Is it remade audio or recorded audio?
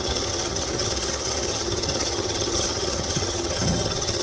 remade